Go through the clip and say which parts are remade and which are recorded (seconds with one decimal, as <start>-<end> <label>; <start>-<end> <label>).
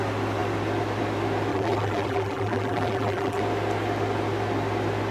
0.0-1.5 recorded; 1.5-3.4 remade; 3.4-5.1 recorded